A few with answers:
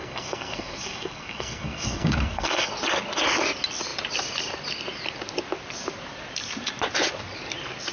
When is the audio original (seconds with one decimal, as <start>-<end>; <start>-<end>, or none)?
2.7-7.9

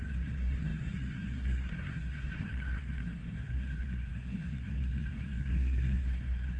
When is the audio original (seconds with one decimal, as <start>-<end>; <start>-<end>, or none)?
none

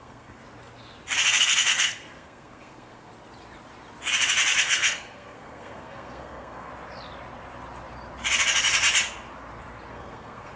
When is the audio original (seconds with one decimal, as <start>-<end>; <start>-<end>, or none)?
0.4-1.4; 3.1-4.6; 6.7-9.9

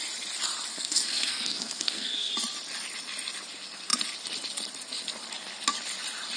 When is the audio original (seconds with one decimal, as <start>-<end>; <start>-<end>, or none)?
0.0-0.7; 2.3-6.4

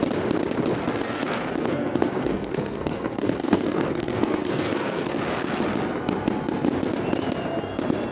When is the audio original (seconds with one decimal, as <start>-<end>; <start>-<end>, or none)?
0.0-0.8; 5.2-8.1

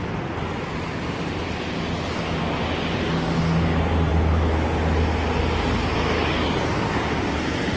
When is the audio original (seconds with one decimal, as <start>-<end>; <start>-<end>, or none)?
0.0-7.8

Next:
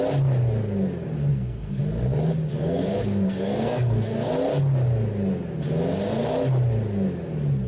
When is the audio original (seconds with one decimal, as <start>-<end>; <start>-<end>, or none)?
0.0-1.3; 1.8-2.6; 4.3-7.7

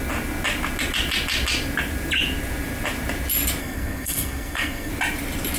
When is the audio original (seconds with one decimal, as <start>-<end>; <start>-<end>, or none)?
0.0-3.6; 4.9-5.6